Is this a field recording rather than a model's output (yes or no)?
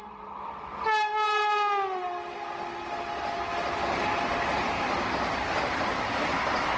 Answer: yes